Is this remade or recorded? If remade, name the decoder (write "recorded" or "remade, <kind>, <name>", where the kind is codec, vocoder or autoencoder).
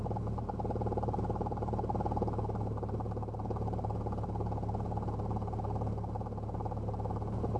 recorded